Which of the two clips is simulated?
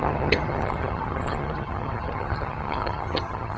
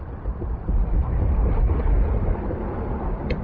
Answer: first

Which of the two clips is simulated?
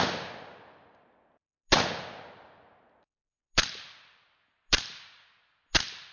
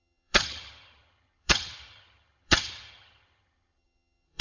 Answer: second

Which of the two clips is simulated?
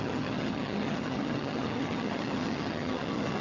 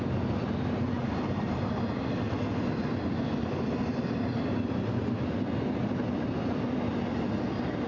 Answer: first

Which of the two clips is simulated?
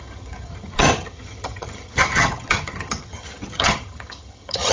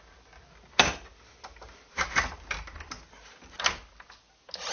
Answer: first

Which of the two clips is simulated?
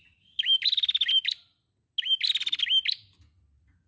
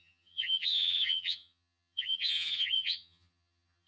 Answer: second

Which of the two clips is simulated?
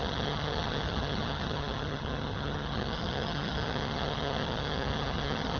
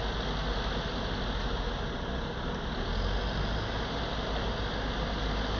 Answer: first